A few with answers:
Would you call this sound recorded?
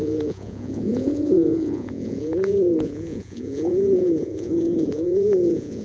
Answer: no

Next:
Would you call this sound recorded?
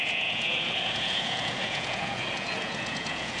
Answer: no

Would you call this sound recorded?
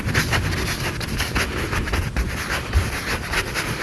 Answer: yes